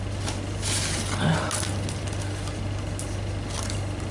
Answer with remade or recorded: recorded